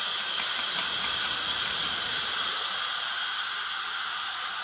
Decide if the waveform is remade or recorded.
recorded